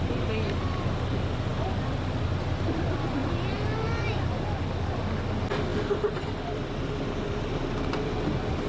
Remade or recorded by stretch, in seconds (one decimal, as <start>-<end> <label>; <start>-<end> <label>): 0.0-5.7 recorded; 5.7-8.2 remade; 8.2-8.7 recorded